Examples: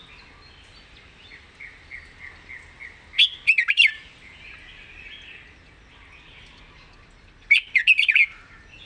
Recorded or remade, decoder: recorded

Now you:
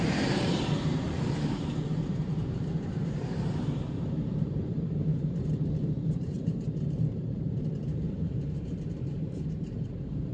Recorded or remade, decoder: remade, vocoder, BigVGAN v2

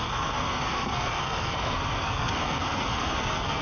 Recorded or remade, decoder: remade, codec, SNAC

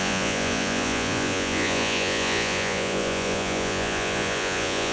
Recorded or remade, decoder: remade, vocoder, Vocos